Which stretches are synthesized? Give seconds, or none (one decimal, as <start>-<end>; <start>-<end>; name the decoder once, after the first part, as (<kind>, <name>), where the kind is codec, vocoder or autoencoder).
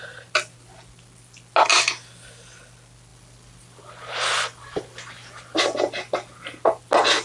3.1-5.6 (vocoder, BigVGAN v2)